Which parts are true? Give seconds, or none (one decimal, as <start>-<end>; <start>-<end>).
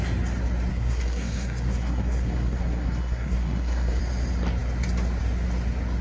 0.0-0.7; 4.0-6.0